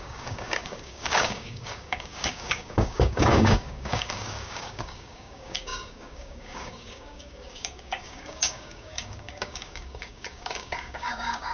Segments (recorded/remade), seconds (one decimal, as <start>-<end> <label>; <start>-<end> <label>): 0.0-11.5 remade

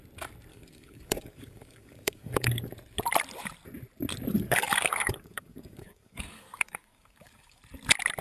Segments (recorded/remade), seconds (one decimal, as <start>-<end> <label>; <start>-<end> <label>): 0.0-0.5 recorded; 0.5-2.7 remade; 2.7-4.3 recorded; 4.3-7.6 remade; 7.6-8.2 recorded

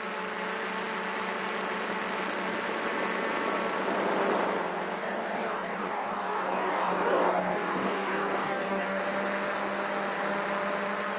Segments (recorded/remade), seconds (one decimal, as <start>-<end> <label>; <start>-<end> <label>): 0.0-5.0 recorded; 5.0-9.0 remade; 9.0-11.2 recorded

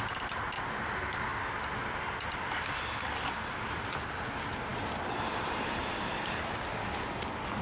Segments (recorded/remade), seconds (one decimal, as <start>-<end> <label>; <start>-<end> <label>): 0.0-7.6 recorded

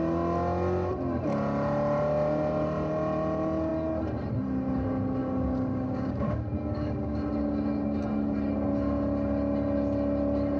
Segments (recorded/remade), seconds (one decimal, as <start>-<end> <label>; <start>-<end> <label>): 0.0-5.2 recorded; 5.2-7.3 remade; 7.3-10.6 recorded

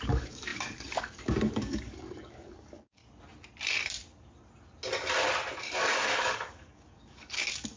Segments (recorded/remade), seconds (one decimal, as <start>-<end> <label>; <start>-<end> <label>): 0.0-3.0 remade; 3.0-5.6 recorded; 5.6-7.8 remade

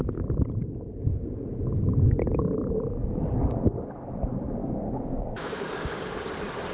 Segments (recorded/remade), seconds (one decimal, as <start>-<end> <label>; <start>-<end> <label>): 0.0-4.6 recorded; 4.6-6.2 remade; 6.2-6.7 recorded

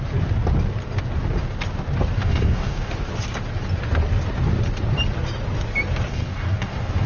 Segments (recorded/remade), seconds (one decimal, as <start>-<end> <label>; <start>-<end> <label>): 0.0-2.2 recorded; 2.2-2.9 remade; 2.9-6.1 recorded; 6.1-7.1 remade